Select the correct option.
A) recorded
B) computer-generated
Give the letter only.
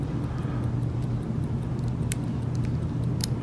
A